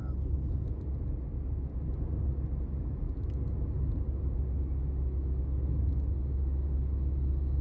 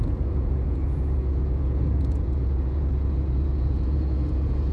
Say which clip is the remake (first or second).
second